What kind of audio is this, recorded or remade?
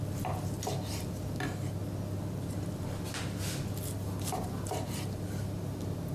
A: recorded